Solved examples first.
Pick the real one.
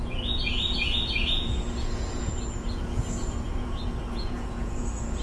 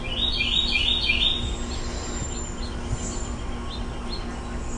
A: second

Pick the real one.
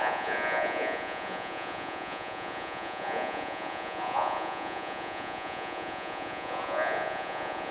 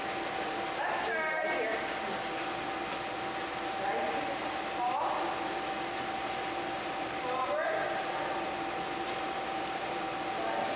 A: second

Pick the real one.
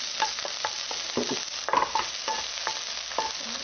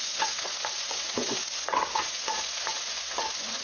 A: first